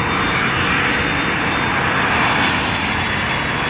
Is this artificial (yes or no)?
no